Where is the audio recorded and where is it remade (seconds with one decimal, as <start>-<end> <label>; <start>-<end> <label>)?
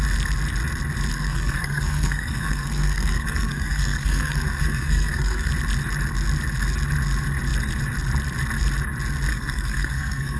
0.0-1.1 recorded; 1.1-5.5 remade; 5.5-9.3 recorded; 9.3-10.4 remade